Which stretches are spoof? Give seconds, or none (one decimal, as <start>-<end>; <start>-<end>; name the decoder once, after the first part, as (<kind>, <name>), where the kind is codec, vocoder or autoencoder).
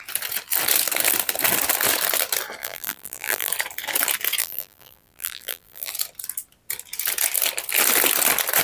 2.6-3.5 (vocoder, BigVGAN v2); 4.4-5.9